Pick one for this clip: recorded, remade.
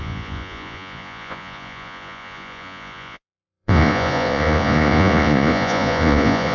remade